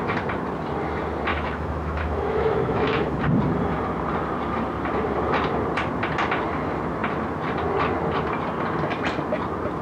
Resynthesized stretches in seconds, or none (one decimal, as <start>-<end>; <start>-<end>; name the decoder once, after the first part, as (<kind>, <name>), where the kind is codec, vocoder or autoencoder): 1.3-3.2 (autoencoder, DAC-VAE)